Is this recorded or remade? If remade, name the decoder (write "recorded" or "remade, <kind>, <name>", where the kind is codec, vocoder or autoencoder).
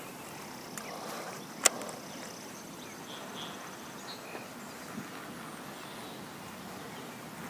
recorded